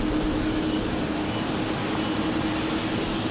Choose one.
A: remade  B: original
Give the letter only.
B